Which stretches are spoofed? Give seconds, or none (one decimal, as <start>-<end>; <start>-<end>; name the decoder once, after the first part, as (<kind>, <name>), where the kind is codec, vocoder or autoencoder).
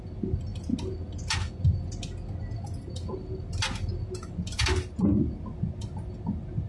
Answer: none